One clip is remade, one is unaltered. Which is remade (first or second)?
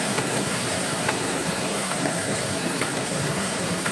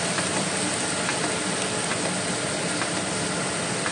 first